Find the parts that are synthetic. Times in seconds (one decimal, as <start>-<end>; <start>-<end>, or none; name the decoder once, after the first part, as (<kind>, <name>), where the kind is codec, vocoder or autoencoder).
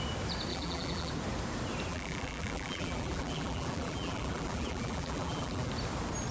0.5-1.1 (vocoder, BigVGAN v2); 1.9-5.7